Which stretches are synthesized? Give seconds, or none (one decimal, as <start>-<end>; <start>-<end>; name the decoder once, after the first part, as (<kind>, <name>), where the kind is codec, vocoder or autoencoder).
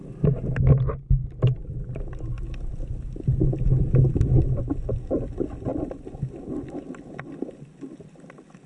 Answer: none